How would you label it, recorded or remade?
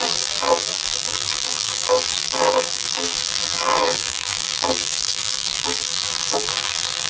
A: remade